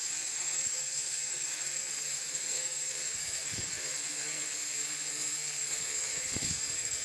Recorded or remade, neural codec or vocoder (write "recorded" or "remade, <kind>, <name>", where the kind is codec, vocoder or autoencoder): remade, codec, SNAC